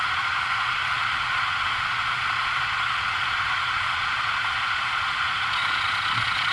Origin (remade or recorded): remade